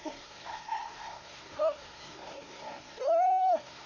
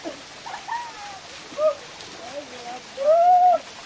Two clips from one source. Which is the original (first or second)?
second